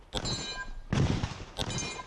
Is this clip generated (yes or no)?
no